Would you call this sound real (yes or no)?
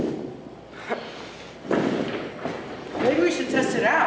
yes